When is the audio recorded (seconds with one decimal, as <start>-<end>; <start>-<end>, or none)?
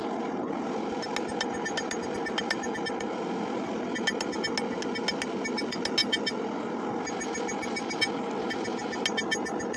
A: 0.0-9.8